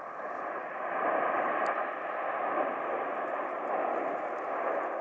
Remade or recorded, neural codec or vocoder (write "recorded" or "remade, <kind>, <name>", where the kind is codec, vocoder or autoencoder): recorded